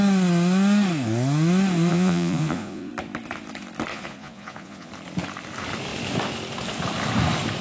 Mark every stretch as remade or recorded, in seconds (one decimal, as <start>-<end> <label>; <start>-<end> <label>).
0.0-1.9 recorded; 1.9-2.9 remade; 2.9-3.9 recorded; 3.9-4.9 remade; 4.9-7.6 recorded